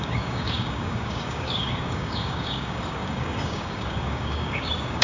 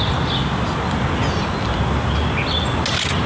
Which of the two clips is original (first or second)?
second